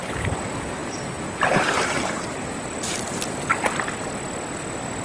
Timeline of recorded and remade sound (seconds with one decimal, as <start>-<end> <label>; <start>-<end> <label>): 0.0-0.8 recorded; 0.8-3.3 remade; 3.3-5.0 recorded